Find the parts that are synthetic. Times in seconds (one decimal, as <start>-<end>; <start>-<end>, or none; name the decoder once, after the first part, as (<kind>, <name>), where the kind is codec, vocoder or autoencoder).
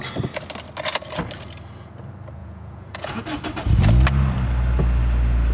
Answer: 2.4-3.2 (vocoder, Vocos)